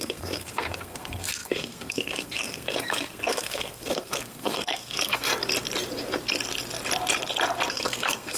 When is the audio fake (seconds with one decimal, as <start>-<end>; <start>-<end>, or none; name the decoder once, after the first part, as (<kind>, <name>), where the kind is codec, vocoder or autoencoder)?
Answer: 0.0-5.3 (codec, SNAC); 7.7-8.4